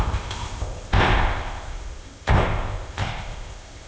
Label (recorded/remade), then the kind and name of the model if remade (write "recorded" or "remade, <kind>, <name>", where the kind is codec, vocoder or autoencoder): remade, codec, ZipCodec